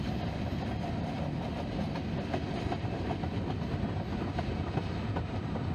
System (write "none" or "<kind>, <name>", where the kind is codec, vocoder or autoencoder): none